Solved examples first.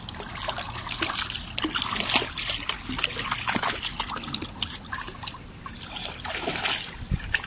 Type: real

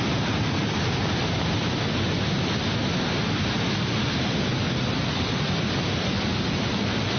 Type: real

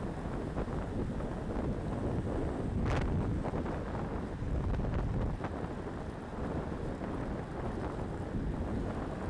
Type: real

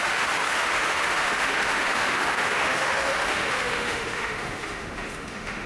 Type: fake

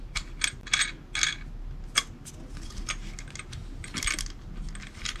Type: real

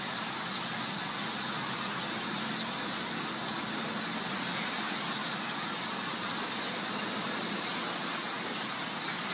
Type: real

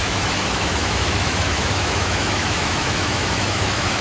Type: fake